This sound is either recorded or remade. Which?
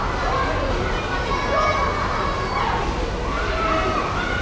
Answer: recorded